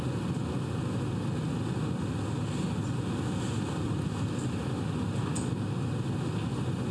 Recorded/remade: recorded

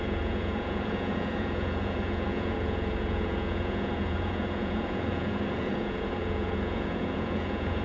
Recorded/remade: remade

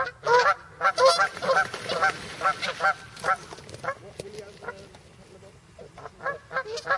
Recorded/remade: recorded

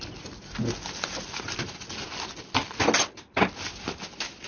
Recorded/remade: recorded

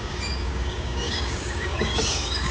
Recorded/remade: remade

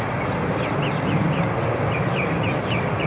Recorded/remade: recorded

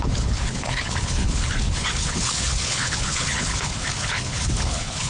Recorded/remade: remade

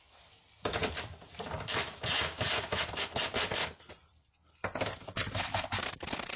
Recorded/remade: recorded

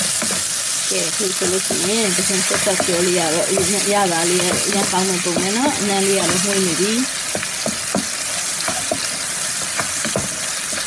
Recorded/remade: recorded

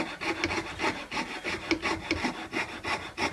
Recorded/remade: recorded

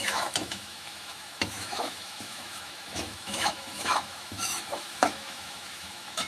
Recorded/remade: remade